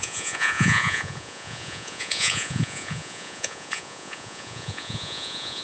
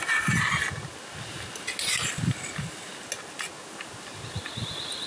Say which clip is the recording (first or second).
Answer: second